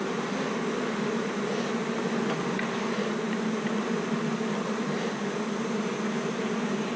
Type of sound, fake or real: real